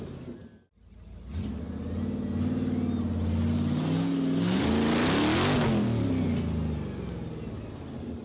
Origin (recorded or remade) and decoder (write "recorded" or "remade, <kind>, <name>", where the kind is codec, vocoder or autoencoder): recorded